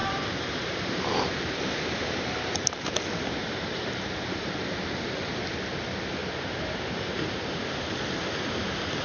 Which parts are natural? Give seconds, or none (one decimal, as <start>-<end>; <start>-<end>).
5.3-6.2; 7.3-9.0